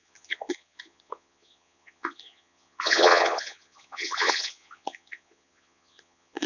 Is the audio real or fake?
fake